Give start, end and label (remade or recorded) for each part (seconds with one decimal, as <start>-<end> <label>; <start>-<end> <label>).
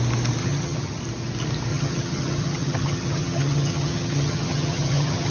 0.0-0.4 recorded; 0.4-1.0 remade; 1.0-1.7 recorded; 1.7-5.3 remade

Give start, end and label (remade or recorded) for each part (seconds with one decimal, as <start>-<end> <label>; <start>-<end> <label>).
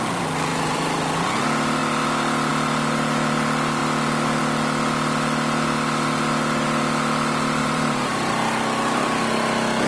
0.0-0.5 recorded; 0.5-1.0 remade; 1.0-7.6 recorded; 7.6-8.3 remade; 8.3-9.9 recorded